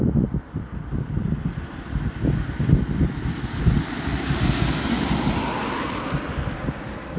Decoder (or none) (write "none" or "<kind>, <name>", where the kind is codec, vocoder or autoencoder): none